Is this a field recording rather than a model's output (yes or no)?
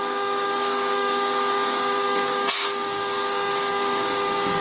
no